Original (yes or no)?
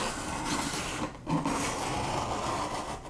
yes